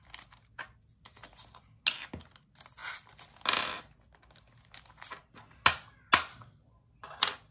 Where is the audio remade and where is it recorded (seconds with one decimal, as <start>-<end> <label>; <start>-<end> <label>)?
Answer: 0.0-7.5 recorded